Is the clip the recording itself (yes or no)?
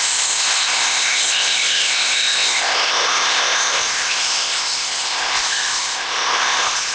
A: no